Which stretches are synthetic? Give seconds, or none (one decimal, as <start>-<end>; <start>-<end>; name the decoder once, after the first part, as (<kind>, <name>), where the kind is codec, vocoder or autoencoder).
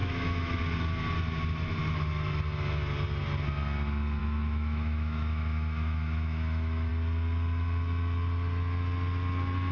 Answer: 0.0-0.6 (autoencoder, DAC-VAE); 4.2-6.9